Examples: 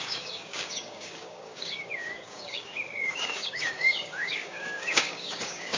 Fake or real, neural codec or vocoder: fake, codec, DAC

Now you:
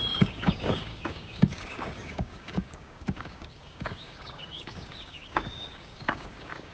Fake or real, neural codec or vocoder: fake, codec, DAC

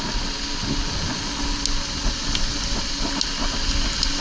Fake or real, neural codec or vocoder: real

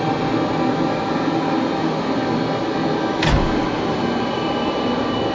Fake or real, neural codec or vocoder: real